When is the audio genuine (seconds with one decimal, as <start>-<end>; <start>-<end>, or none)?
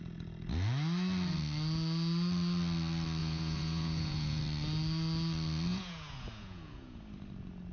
0.0-3.2; 4.4-5.7; 7.0-7.7